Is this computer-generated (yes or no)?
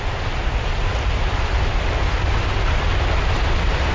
no